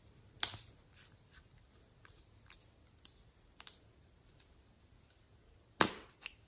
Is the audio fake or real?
real